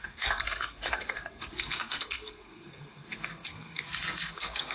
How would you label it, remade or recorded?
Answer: remade